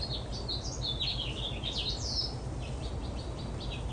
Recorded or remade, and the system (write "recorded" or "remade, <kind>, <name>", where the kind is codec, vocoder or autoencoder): recorded